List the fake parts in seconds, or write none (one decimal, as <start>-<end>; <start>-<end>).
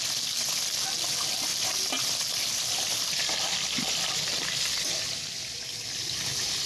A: none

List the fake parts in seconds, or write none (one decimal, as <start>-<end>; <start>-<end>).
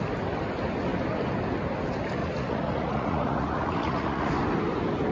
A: 2.2-4.3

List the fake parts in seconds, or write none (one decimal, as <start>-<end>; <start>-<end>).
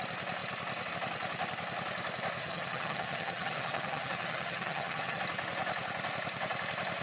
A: 2.4-5.2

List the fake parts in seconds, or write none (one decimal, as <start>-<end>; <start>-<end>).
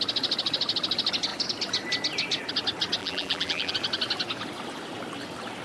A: 3.0-3.7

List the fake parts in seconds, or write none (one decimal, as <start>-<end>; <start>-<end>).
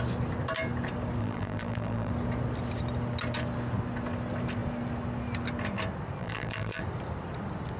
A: 1.2-2.1; 6.2-6.8